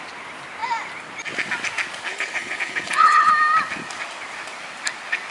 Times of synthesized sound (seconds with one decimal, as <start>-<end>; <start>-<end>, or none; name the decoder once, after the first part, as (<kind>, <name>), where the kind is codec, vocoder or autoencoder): 2.1-3.3 (codec, HILCodec)